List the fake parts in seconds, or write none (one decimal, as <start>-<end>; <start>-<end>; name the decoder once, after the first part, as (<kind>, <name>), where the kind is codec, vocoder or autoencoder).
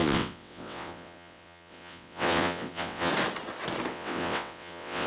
0.0-3.1 (vocoder, WaveNeXt); 3.9-5.1